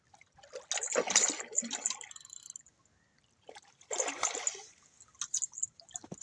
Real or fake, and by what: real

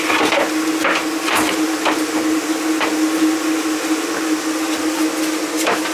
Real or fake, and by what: real